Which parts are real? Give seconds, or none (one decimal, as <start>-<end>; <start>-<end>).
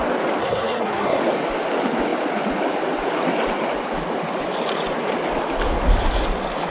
0.0-0.4; 1.2-6.7